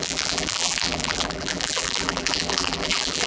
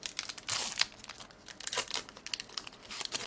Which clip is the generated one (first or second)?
first